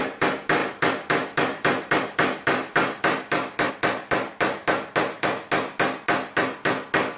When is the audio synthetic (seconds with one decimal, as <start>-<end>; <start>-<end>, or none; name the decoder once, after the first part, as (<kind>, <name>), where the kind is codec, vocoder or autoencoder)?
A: 0.6-3.7 (vocoder, BigVGAN v2)